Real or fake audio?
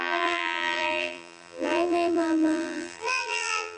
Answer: fake